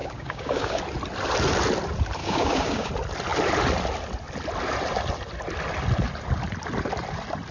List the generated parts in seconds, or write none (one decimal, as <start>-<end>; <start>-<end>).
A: 0.0-0.8; 2.2-2.9